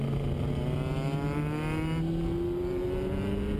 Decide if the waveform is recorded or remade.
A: recorded